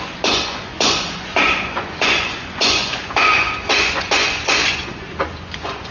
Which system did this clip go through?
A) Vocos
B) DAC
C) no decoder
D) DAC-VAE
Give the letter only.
A